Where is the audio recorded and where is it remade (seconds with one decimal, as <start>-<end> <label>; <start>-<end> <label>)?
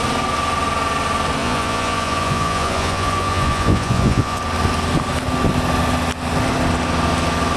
0.0-1.4 recorded; 1.4-4.4 remade; 4.4-7.6 recorded